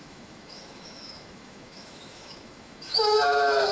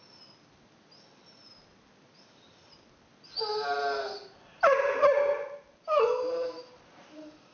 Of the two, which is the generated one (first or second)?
first